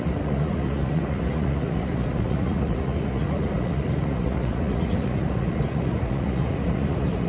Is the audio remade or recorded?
remade